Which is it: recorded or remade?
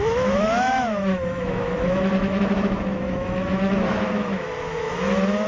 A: remade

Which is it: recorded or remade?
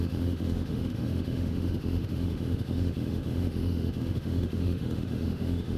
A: remade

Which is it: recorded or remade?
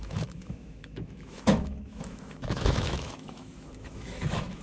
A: remade